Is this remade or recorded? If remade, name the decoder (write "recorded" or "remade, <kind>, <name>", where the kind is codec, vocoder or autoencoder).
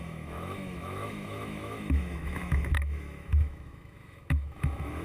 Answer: remade, autoencoder, DAC-VAE